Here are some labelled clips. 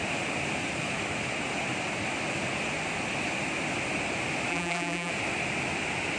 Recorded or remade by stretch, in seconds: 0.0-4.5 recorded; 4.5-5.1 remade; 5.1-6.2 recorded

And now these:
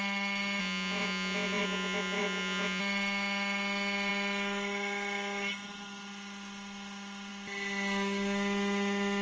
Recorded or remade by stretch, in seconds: 0.0-0.6 recorded; 0.6-2.8 remade; 2.8-9.2 recorded